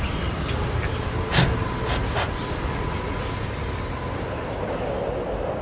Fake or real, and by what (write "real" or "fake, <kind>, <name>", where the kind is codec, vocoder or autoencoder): real